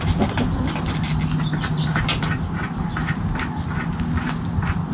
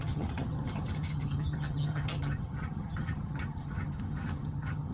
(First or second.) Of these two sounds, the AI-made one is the second